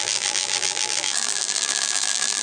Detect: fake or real fake